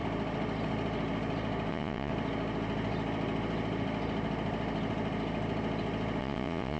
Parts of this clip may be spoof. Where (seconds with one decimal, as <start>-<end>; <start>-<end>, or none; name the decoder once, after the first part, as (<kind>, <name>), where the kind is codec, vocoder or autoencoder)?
1.7-2.1 (vocoder, Vocos); 6.2-6.8